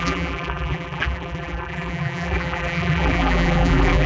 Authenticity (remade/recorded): remade